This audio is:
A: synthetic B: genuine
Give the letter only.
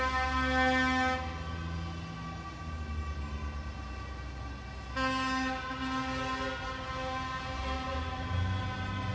B